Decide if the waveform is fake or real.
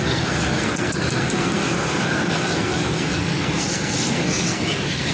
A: fake